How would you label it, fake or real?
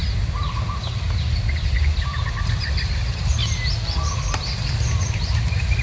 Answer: real